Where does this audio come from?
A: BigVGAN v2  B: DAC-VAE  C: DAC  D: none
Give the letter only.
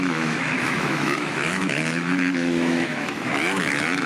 B